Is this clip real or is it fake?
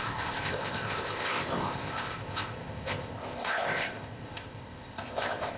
fake